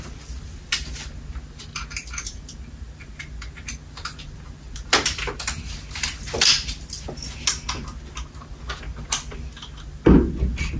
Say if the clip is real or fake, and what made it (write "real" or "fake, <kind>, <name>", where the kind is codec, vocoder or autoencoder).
real